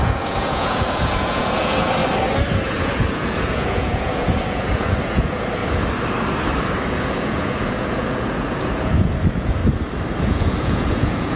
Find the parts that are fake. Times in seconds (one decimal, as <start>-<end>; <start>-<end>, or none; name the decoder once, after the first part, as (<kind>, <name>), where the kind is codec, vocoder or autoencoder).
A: 0.0-2.0 (vocoder, Vocos); 2.8-5.6; 6.9-9.6; 10.2-11.4